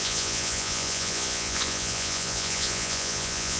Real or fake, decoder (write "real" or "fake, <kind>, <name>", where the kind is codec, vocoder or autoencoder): fake, vocoder, Vocos